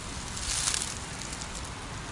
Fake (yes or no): no